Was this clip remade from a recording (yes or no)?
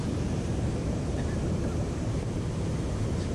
yes